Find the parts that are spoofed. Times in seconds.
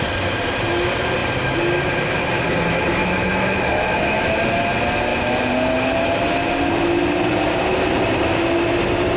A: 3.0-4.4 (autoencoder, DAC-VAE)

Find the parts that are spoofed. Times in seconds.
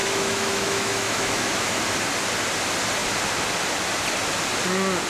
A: 0.0-1.7 (autoencoder, DAC-VAE)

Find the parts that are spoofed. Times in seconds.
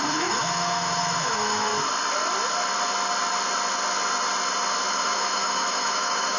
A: 0.0-1.7 (autoencoder, DAC-VAE); 4.9-6.4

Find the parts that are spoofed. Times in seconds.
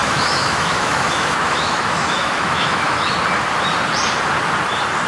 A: 0.0-3.1 (autoencoder, DAC-VAE)